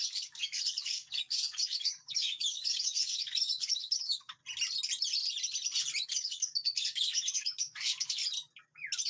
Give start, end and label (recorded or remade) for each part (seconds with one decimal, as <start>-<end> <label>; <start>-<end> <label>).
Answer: 0.0-4.4 remade; 4.4-6.1 recorded; 6.1-8.2 remade; 8.2-9.1 recorded